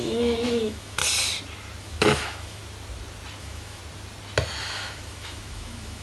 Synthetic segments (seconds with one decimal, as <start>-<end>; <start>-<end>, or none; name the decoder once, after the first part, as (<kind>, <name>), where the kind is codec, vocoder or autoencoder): 0.0-1.0 (autoencoder, DAC-VAE); 1.8-2.6; 3.4-3.8; 4.6-6.0